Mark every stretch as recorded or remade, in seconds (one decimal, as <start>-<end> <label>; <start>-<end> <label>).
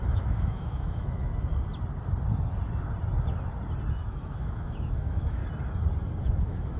0.0-1.3 remade; 1.3-3.9 recorded; 3.9-5.4 remade; 5.4-6.2 recorded; 6.2-6.8 remade